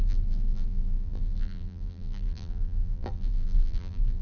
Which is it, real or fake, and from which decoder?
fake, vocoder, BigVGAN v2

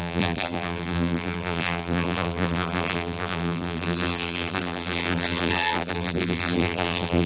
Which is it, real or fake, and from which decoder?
fake, vocoder, BigVGAN v2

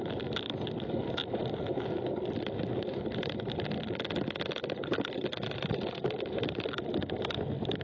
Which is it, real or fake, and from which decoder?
real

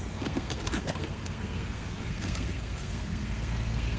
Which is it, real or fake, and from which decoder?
fake, codec, SNAC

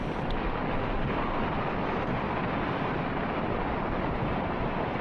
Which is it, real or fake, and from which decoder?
real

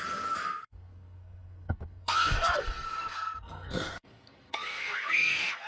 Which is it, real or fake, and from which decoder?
fake, codec, SNAC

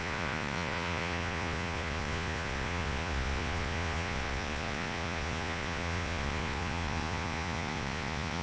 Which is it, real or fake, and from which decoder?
fake, vocoder, Vocos